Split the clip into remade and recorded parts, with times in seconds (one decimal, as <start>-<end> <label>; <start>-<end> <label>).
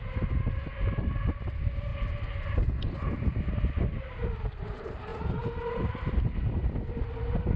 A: 0.0-7.6 recorded